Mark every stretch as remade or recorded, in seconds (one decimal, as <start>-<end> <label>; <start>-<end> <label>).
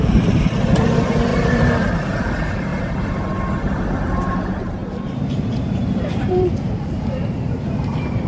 0.0-2.7 remade; 2.7-3.8 recorded; 3.8-8.3 remade